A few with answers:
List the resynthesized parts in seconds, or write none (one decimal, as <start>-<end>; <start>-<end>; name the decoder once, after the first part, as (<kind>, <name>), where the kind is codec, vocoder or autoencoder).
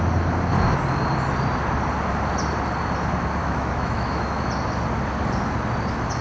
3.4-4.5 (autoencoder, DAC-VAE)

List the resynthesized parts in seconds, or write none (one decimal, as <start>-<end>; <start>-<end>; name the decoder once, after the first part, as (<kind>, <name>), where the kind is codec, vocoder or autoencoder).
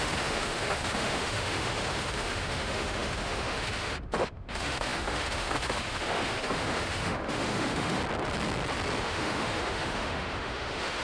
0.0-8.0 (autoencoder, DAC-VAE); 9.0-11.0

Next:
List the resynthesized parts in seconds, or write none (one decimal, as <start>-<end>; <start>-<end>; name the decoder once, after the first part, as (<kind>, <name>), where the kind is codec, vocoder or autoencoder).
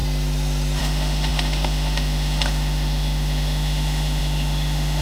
0.8-5.0 (autoencoder, DAC-VAE)